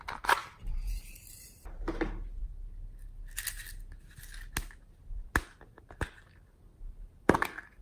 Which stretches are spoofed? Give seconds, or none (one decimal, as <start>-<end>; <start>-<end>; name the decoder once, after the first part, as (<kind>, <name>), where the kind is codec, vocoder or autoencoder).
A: 0.0-2.4 (vocoder, BigVGAN v2); 6.8-7.8